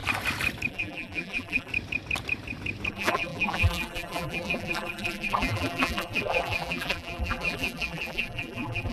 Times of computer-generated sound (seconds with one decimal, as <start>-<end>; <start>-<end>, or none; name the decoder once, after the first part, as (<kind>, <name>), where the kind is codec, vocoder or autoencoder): 0.7-1.7 (vocoder, BigVGAN v2); 2.9-8.9